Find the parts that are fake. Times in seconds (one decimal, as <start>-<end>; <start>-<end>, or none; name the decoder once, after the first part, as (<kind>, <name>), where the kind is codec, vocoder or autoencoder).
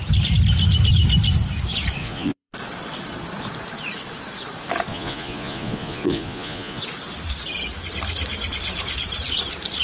2.0-2.5 (vocoder, Vocos); 4.9-6.8